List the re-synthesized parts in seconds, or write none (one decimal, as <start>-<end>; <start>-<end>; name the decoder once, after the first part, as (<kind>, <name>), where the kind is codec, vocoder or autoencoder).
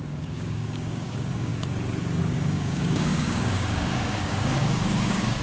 0.0-1.5 (codec, DAC); 2.2-5.4